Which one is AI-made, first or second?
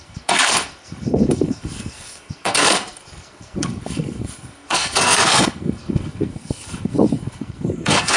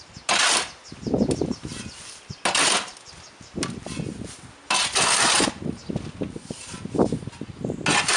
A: first